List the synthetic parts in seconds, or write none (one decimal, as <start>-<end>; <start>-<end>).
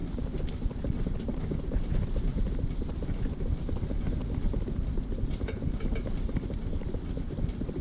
none